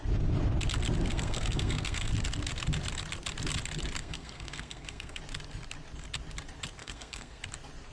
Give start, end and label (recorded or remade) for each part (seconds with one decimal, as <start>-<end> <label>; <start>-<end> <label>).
0.0-1.1 recorded; 1.1-2.1 remade; 2.1-4.0 recorded; 4.0-5.2 remade; 5.2-6.8 recorded; 6.8-7.4 remade; 7.4-7.9 recorded